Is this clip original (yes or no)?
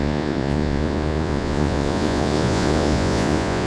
no